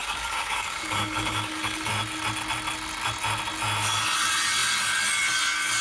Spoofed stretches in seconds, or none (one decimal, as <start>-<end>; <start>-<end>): 0.0-1.9